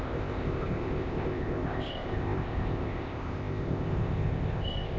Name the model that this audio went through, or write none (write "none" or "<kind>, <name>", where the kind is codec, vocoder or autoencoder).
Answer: codec, ZipCodec